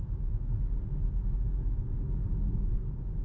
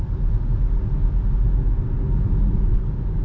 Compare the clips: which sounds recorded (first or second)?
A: second